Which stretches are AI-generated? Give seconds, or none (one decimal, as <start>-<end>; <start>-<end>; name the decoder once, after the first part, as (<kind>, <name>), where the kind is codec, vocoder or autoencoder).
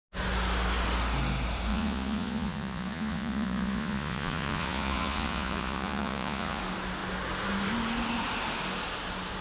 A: 1.7-6.6 (vocoder, Vocos)